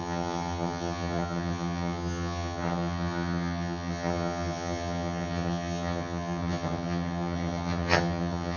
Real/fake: fake